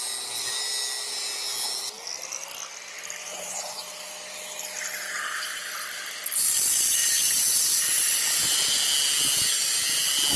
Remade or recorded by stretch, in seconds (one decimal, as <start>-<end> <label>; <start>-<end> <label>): 0.0-3.2 recorded; 3.2-3.8 remade; 3.8-10.4 recorded

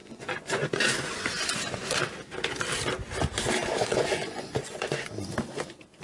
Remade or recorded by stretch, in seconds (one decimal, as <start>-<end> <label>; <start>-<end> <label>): 0.0-2.0 remade; 2.0-3.6 recorded; 3.6-5.1 remade; 5.1-6.0 recorded

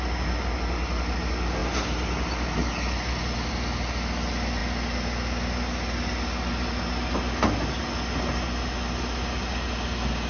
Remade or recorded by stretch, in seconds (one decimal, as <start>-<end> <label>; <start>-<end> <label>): 0.0-10.3 recorded

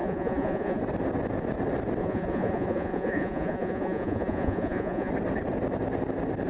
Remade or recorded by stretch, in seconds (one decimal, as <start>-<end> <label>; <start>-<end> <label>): 0.0-0.8 remade; 0.8-2.0 recorded; 2.0-5.1 remade; 5.1-6.5 recorded

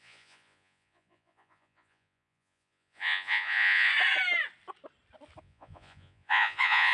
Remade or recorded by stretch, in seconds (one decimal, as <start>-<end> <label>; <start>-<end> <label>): 0.0-3.9 remade; 3.9-5.4 recorded; 5.4-6.9 remade

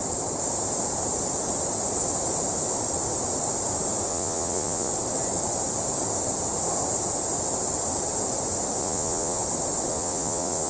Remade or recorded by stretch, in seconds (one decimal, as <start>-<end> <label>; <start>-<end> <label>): 0.0-4.1 recorded; 4.1-4.9 remade; 4.9-8.8 recorded; 8.8-9.4 remade; 9.4-9.9 recorded; 9.9-10.7 remade

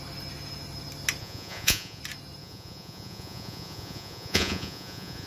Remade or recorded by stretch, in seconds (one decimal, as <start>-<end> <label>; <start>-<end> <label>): 0.0-1.2 recorded; 1.2-2.0 remade; 2.0-2.4 recorded; 2.4-5.3 remade